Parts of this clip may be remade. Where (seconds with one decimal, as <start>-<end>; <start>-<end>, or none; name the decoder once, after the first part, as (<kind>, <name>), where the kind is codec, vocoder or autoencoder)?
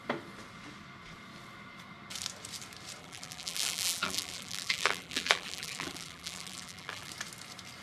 3.0-7.1 (vocoder, BigVGAN v2)